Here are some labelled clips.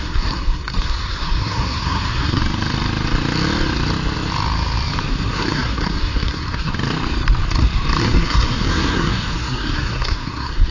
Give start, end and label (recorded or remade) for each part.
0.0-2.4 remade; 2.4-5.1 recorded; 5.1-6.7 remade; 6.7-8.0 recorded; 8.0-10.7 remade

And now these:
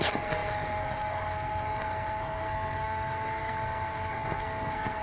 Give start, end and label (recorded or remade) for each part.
0.0-5.0 remade

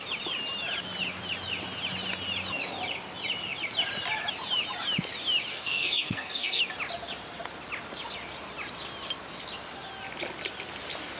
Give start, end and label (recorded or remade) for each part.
0.0-5.5 recorded; 5.5-6.6 remade; 6.6-11.2 recorded

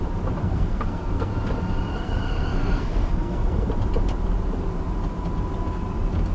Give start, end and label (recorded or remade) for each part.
0.0-0.4 recorded; 0.4-1.3 remade; 1.3-1.9 recorded; 1.9-3.7 remade; 3.7-6.3 recorded

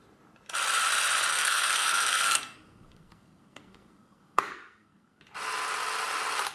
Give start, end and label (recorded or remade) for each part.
0.0-1.3 recorded; 1.3-5.2 remade; 5.2-6.5 recorded

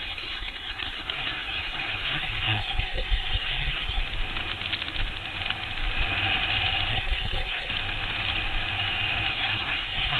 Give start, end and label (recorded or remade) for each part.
0.0-4.0 remade; 4.0-6.9 recorded; 6.9-7.7 remade; 7.7-9.3 recorded; 9.3-10.2 remade

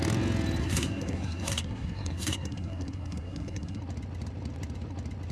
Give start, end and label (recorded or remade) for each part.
0.0-0.6 recorded; 0.6-3.8 remade; 3.8-5.3 recorded